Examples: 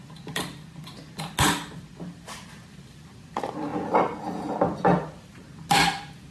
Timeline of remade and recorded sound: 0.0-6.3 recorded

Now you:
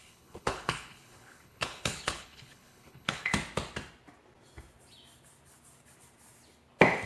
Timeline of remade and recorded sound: 0.0-3.3 remade; 3.3-7.1 recorded

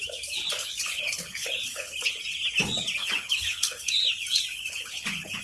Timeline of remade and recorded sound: 0.0-0.6 recorded; 0.6-2.2 remade; 2.2-3.0 recorded; 3.0-3.9 remade; 3.9-4.5 recorded; 4.5-5.4 remade

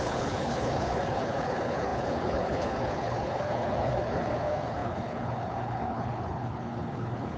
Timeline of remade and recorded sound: 0.0-7.4 remade